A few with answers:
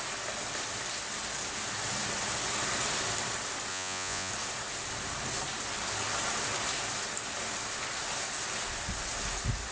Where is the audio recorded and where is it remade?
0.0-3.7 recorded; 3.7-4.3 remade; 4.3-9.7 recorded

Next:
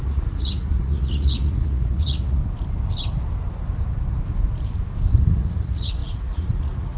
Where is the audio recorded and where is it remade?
0.0-2.4 remade; 2.4-5.2 recorded; 5.2-7.0 remade

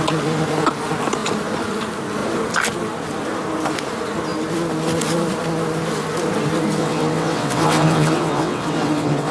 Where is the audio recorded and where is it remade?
0.0-6.8 recorded; 6.8-9.3 remade

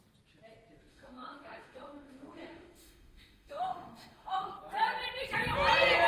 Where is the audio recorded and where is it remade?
0.0-0.9 recorded; 0.9-4.6 remade; 4.6-6.1 recorded

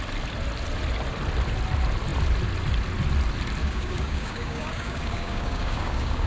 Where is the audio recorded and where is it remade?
0.0-3.6 recorded; 3.6-6.3 remade